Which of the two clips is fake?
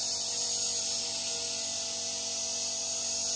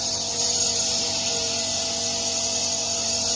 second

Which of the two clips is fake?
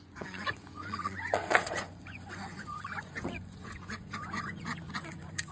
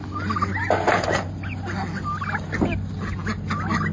first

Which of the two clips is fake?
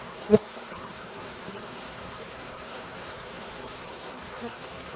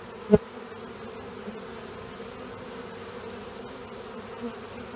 first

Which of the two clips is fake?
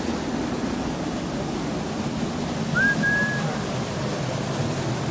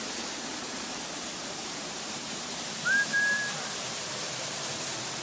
second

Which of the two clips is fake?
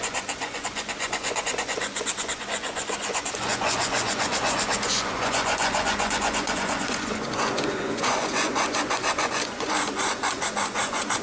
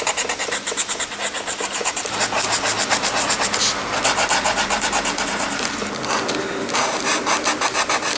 first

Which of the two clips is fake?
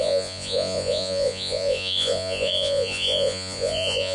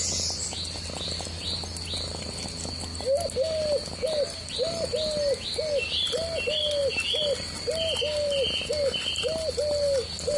first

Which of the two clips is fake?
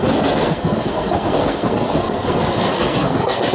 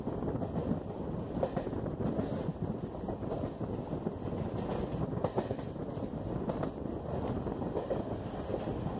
first